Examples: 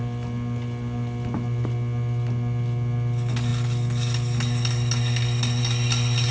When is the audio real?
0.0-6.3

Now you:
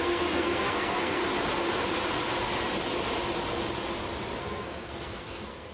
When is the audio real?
1.2-4.4